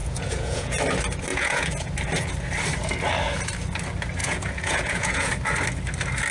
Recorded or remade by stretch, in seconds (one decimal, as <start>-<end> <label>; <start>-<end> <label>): 0.0-0.8 remade; 0.8-1.3 recorded; 1.3-1.9 remade; 1.9-4.2 recorded; 4.2-5.3 remade; 5.3-6.3 recorded